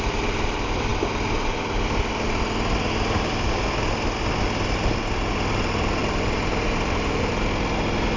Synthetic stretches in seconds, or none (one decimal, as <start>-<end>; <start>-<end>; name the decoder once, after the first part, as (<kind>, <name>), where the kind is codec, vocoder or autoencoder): none